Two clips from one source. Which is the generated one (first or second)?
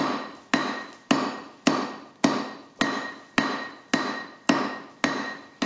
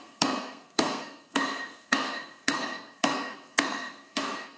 second